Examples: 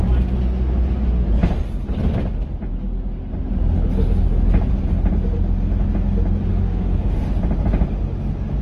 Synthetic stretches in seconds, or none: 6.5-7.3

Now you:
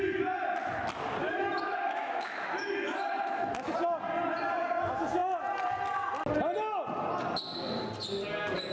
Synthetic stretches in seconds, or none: 1.2-3.7

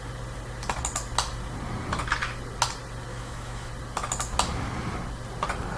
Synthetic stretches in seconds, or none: 3.1-3.7

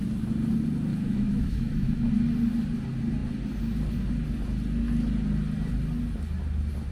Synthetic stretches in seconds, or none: 0.9-2.1

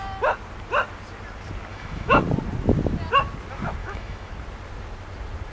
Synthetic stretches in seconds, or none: 1.7-2.2; 3.8-4.3